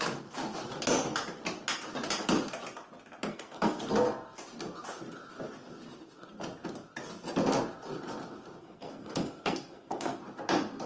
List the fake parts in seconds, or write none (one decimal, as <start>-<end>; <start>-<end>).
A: 3.3-3.8; 8.6-10.2